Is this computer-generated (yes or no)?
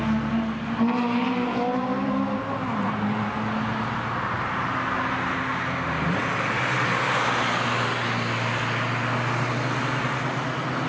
no